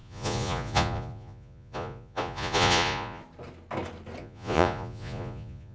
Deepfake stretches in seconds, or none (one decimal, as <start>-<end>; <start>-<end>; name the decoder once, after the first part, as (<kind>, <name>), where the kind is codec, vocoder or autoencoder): 0.0-3.2 (vocoder, Vocos); 4.2-5.7